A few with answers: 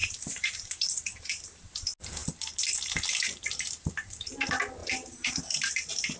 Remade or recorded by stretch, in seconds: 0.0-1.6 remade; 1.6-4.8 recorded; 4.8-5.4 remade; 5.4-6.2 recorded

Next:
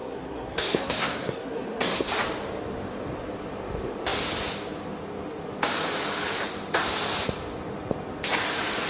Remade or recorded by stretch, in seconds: 0.0-2.1 remade; 2.1-8.9 recorded

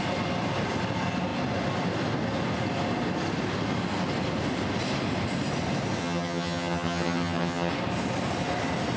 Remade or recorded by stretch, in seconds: 0.0-6.0 recorded; 6.0-7.7 remade; 7.7-9.0 recorded

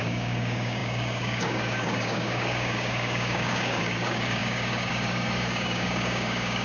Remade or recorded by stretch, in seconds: 0.0-6.6 remade

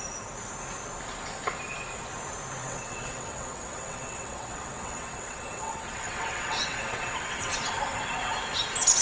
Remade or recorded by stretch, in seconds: 0.0-2.6 recorded; 2.6-7.6 remade; 7.6-9.0 recorded